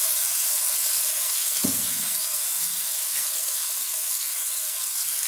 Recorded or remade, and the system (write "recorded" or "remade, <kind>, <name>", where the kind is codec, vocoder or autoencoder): remade, codec, SNAC